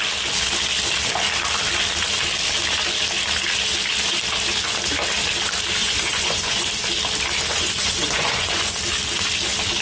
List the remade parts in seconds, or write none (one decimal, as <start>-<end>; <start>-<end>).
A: 5.8-6.7; 7.5-8.8